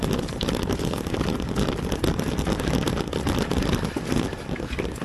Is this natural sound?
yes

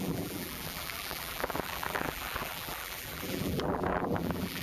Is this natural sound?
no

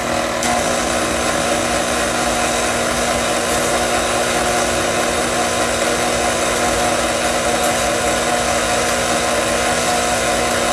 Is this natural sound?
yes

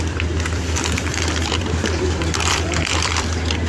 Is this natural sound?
no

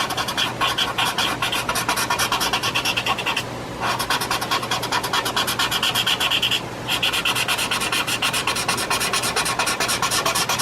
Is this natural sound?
yes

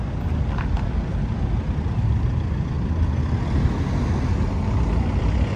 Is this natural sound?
yes